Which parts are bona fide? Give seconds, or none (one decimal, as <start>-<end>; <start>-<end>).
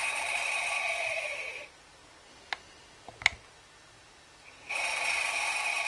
2.0-5.1